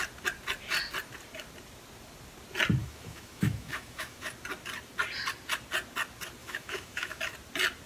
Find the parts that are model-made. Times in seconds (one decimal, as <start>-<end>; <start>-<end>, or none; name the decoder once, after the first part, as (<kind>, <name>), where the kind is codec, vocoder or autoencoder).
2.8-4.3 (autoencoder, DAC-VAE); 6.4-7.2